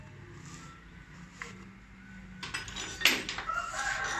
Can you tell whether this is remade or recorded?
recorded